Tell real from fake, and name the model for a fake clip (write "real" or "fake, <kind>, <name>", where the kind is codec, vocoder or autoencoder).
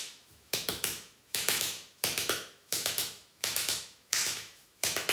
fake, autoencoder, DAC-VAE